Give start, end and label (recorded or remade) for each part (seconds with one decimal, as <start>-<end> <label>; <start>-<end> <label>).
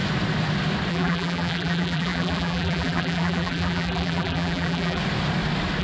0.0-0.9 recorded; 0.9-5.0 remade; 5.0-5.8 recorded